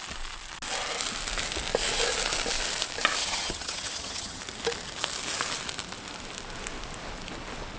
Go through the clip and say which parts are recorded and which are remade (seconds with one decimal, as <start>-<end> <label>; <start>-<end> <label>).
0.0-3.2 recorded; 3.2-4.4 remade; 4.4-7.8 recorded